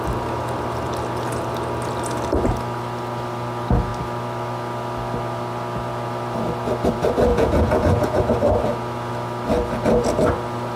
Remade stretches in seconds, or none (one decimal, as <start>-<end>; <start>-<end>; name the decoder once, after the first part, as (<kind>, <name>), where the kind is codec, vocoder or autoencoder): 7.3-8.2 (vocoder, Vocos)